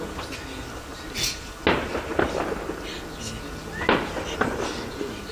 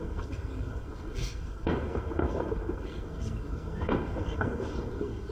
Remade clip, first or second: second